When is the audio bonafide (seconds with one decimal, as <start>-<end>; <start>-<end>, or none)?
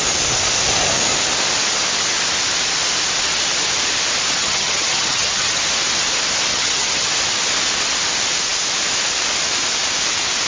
0.0-4.4; 5.6-6.5; 7.1-10.5